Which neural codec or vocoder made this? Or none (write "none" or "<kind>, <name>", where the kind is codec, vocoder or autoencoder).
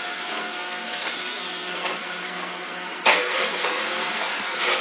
codec, SNAC